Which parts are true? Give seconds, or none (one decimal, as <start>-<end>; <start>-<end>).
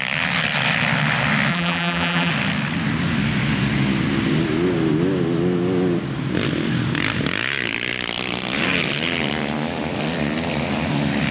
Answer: 0.0-1.5; 2.3-11.3